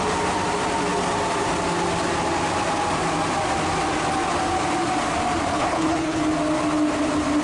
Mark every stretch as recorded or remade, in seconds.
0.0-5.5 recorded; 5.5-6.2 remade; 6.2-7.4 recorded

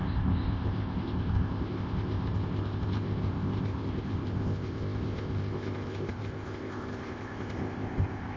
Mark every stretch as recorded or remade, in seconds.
0.0-8.4 remade

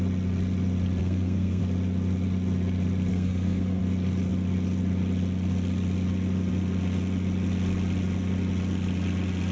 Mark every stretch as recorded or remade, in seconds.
0.0-1.0 recorded; 1.0-1.6 remade; 1.6-3.1 recorded; 3.1-3.8 remade; 3.8-9.5 recorded